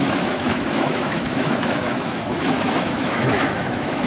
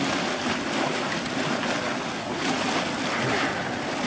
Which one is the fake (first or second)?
first